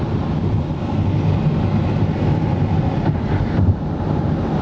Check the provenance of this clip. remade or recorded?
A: recorded